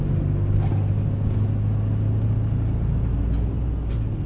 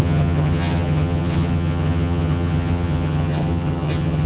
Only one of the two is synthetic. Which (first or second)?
second